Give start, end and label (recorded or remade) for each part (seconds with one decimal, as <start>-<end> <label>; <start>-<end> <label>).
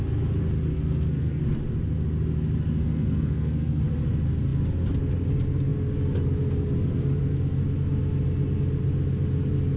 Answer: 0.0-0.7 recorded; 0.7-1.4 remade; 1.4-2.8 recorded; 2.8-3.8 remade; 3.8-9.8 recorded